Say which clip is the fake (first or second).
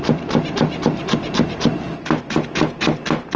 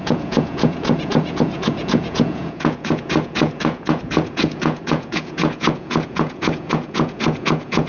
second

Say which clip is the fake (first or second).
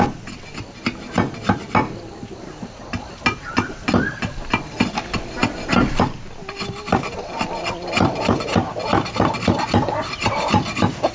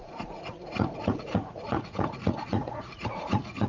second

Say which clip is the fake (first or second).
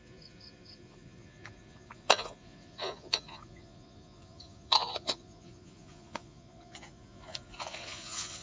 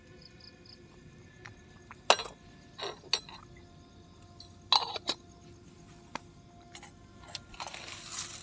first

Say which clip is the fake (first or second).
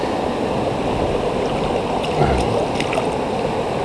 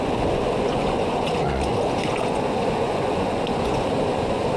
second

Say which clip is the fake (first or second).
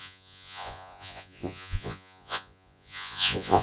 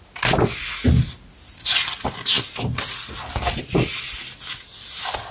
first